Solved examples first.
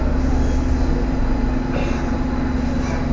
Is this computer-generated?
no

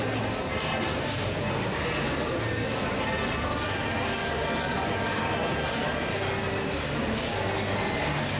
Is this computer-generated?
no